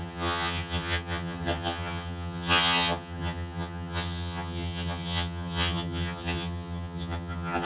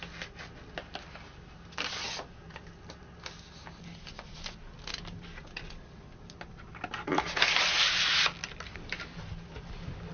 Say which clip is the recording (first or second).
second